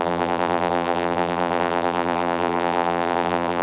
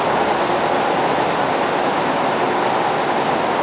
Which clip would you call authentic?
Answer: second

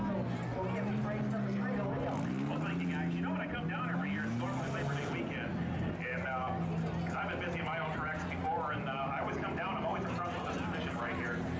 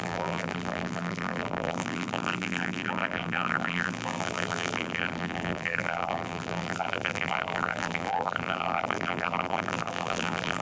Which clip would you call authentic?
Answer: first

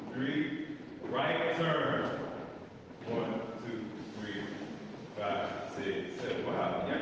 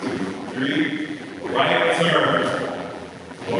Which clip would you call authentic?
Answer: first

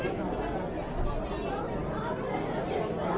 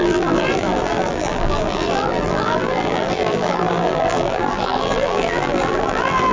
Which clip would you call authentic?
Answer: first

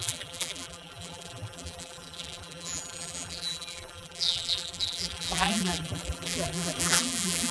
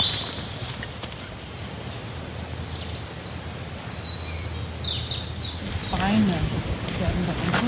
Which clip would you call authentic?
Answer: second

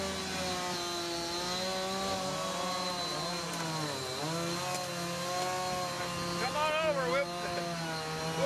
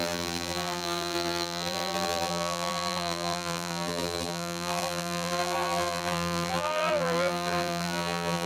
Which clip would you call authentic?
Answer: first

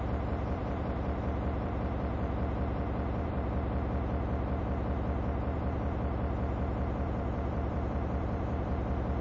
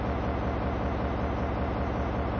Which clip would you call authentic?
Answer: second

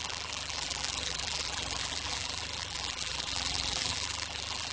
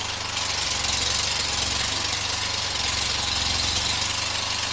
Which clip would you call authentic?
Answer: second